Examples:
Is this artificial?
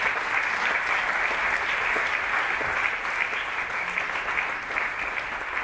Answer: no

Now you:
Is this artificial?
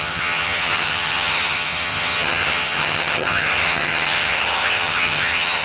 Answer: yes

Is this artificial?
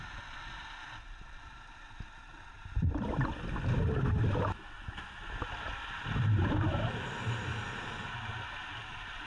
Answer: no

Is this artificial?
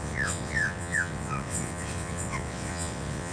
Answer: yes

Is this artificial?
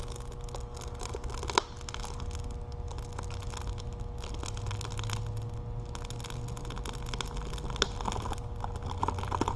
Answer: no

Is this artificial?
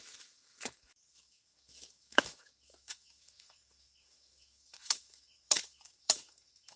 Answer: yes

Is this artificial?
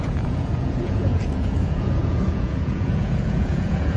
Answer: yes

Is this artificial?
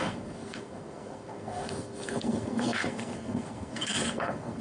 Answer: yes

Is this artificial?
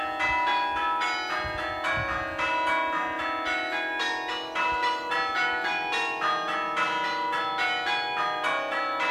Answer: no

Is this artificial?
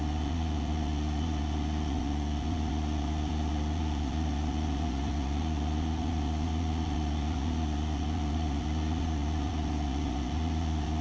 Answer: yes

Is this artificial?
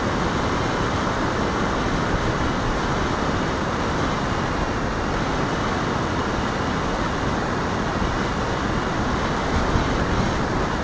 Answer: no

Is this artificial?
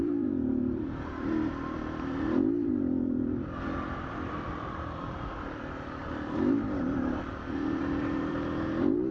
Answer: yes